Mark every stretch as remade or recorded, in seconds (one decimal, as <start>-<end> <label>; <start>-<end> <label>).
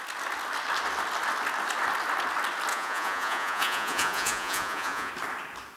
0.0-2.7 recorded; 2.7-5.1 remade; 5.1-5.8 recorded